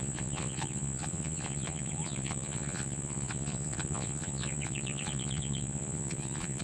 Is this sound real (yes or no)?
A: no